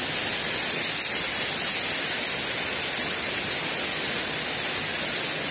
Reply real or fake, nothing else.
real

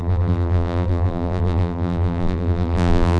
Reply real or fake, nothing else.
fake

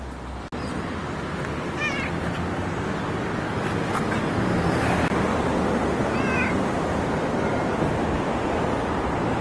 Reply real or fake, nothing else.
real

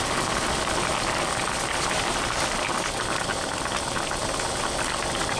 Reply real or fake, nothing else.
real